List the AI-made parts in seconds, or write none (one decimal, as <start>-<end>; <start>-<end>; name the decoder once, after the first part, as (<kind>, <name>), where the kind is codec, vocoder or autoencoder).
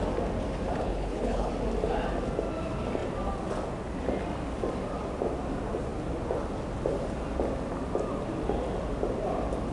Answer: 0.8-1.5 (codec, HILCodec)